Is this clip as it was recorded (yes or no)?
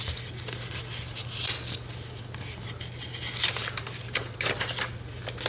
yes